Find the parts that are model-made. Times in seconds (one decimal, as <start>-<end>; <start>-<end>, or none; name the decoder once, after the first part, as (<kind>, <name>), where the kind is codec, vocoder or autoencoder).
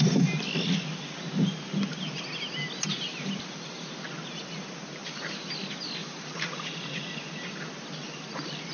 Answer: 3.1-3.9 (vocoder, BigVGAN v2); 5.0-5.5; 6.0-6.7